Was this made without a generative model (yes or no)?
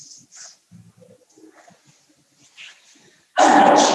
yes